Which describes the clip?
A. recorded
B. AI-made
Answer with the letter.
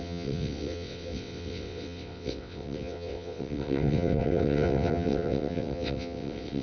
B